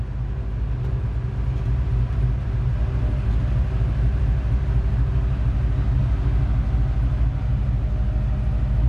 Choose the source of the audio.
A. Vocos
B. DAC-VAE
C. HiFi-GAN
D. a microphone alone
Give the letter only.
D